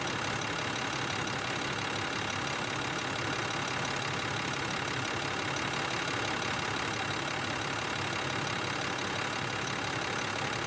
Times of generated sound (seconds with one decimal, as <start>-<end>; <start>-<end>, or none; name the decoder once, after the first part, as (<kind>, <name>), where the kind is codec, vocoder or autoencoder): none